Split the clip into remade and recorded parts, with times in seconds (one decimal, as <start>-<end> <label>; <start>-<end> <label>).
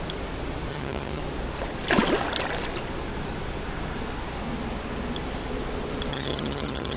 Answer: 0.0-0.7 recorded; 0.7-1.2 remade; 1.2-6.1 recorded; 6.1-7.0 remade